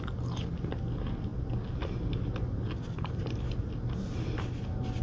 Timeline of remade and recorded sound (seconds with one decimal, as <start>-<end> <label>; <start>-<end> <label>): 0.0-5.0 recorded